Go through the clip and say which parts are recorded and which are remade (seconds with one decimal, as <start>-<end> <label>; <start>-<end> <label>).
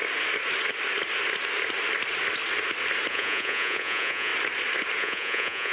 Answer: 0.0-3.1 recorded; 3.1-4.3 remade; 4.3-5.0 recorded; 5.0-5.7 remade